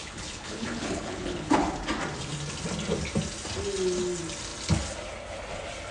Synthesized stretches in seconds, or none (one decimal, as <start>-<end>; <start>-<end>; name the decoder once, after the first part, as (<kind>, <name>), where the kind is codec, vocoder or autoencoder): 0.0-1.6 (codec, HILCodec)